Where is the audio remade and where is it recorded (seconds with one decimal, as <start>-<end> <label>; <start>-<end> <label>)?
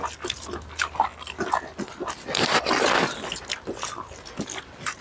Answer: 0.0-5.0 recorded